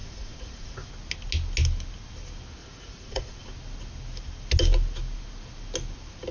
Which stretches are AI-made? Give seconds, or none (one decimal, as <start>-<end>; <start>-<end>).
0.0-0.9; 2.6-3.4

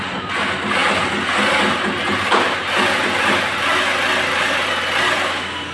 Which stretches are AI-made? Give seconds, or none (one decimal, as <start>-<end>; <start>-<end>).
none

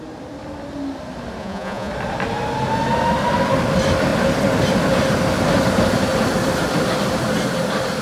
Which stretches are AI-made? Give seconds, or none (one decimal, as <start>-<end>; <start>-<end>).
1.4-1.9

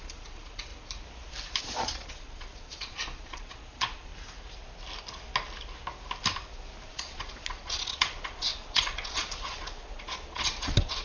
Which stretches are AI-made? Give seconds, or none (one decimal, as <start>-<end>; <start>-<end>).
0.0-0.7; 1.6-4.1; 6.9-11.0